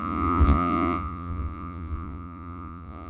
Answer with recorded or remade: remade